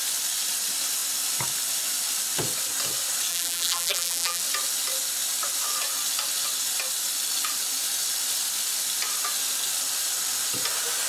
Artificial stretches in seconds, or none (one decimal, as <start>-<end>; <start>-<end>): 3.3-4.4

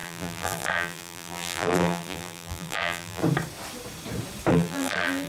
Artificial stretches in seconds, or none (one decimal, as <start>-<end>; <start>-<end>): 0.0-3.2; 4.5-5.3

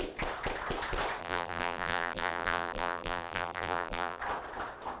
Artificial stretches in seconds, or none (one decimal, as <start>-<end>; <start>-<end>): 1.2-4.2

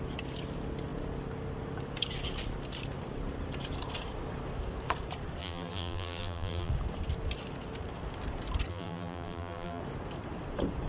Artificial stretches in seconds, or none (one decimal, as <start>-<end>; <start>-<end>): 5.4-6.7; 8.7-9.8

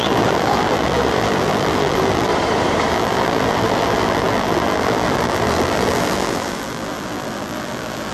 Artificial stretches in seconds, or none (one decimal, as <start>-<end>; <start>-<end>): 0.0-2.3; 2.9-8.1

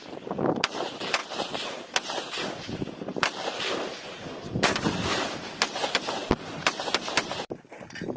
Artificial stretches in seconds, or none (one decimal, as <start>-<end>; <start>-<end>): 0.0-8.2

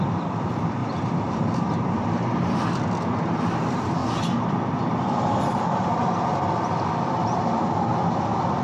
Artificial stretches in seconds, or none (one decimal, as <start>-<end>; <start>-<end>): 0.8-2.6

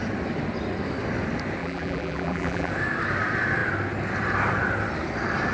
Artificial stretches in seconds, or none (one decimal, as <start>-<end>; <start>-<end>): 1.6-2.7